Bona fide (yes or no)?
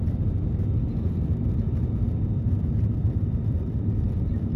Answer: no